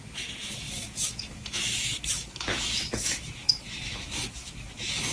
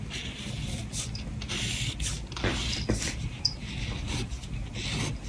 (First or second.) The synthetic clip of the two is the first